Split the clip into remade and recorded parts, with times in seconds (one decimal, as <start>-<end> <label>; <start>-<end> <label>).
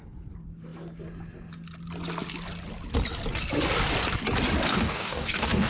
0.0-4.7 recorded; 4.7-5.7 remade